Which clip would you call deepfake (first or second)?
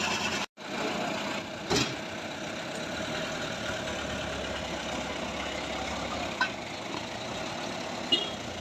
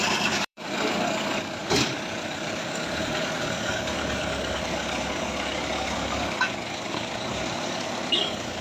second